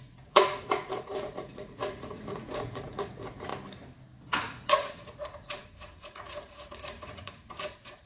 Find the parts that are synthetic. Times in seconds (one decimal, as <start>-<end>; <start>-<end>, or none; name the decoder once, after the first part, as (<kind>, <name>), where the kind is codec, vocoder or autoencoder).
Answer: 0.0-3.5 (vocoder, Vocos); 4.2-8.1